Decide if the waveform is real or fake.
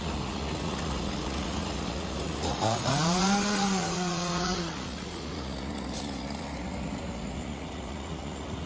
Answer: fake